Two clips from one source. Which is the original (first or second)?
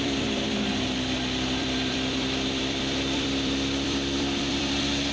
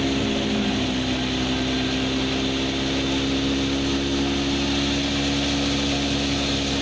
second